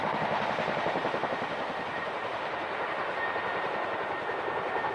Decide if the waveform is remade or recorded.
recorded